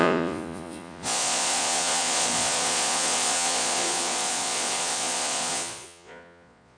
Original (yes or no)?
no